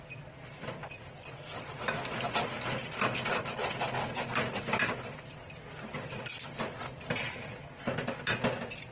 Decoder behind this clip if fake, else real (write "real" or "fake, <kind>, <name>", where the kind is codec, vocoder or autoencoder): real